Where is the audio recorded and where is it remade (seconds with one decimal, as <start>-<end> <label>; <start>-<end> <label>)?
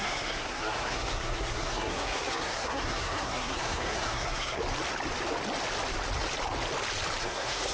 0.0-4.6 remade; 4.6-7.2 recorded; 7.2-7.7 remade